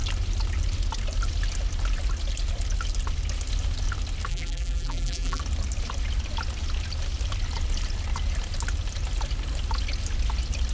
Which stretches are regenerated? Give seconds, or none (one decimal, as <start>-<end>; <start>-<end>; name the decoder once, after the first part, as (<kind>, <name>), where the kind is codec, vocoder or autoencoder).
4.3-5.4 (vocoder, BigVGAN v2)